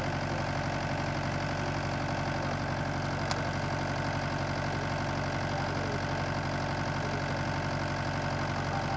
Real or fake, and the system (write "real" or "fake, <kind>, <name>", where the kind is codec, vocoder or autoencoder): real